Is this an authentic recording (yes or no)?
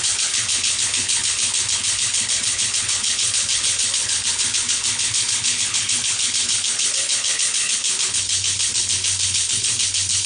no